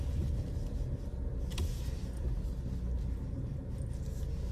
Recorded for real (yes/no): yes